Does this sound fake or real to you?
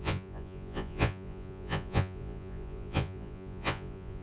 fake